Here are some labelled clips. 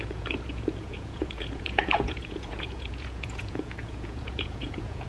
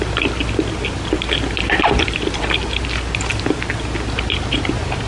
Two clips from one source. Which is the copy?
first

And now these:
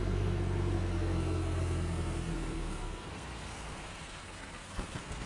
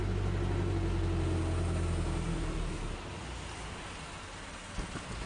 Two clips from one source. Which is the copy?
first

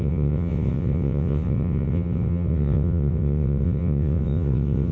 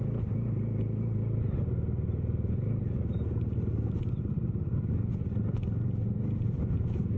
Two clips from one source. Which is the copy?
first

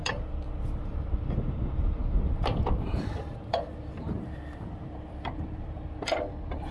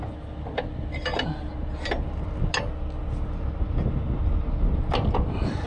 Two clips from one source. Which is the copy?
first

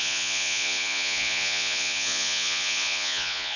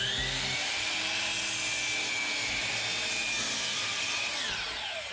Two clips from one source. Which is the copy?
first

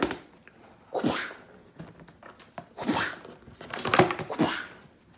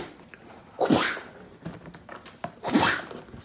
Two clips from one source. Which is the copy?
second